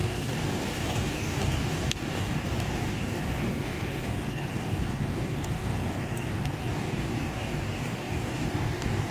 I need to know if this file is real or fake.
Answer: fake